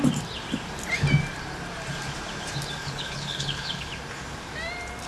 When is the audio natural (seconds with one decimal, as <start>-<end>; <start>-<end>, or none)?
0.0-2.8; 3.9-5.1